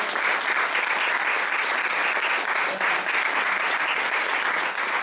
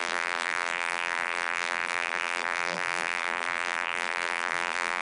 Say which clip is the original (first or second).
first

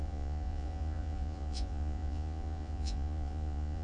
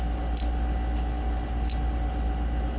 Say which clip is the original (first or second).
second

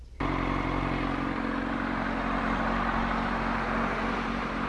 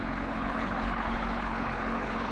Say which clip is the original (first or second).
first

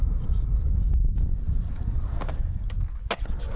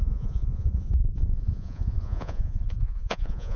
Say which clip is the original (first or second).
first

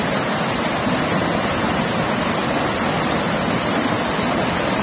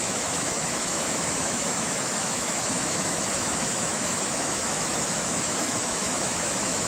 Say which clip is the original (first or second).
first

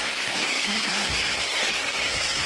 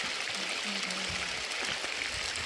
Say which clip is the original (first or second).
second